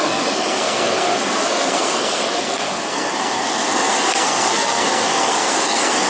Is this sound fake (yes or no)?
yes